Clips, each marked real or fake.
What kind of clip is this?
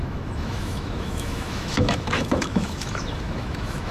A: fake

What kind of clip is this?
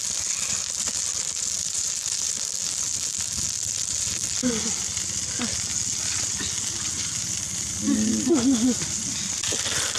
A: real